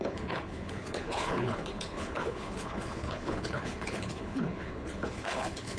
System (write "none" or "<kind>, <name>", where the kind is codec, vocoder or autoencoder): codec, HILCodec